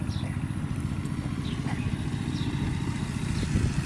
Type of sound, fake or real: real